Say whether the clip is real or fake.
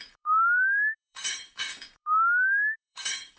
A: fake